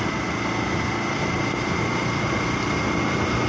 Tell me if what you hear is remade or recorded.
recorded